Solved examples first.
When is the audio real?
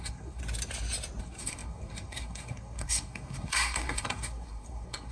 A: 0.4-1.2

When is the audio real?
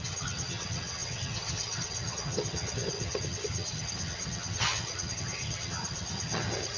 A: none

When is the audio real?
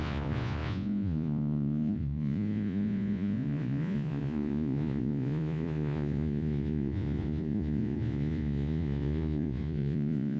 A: none